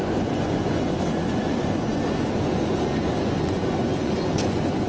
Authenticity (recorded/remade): remade